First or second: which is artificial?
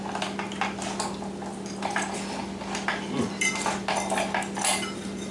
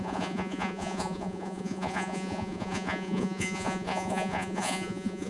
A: second